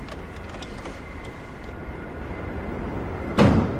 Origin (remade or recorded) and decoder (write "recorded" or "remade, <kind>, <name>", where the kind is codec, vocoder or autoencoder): recorded